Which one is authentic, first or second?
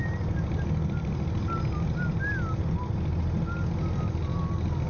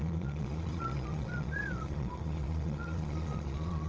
first